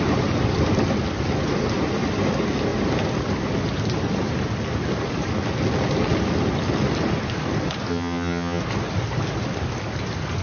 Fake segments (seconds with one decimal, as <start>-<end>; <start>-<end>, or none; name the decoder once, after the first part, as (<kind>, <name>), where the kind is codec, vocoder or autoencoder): 7.9-8.6 (vocoder, HiFi-GAN)